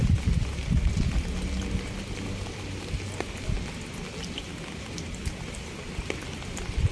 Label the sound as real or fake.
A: real